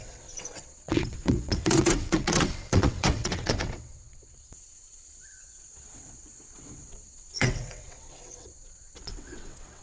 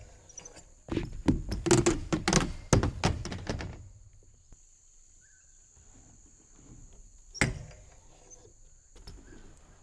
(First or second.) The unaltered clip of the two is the second